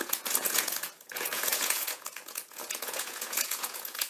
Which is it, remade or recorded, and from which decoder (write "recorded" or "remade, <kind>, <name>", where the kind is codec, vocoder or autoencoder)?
remade, vocoder, Vocos